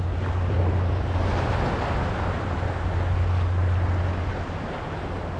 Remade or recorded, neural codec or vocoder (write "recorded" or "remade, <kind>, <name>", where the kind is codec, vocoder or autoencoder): recorded